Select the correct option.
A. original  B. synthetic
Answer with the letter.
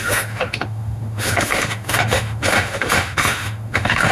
B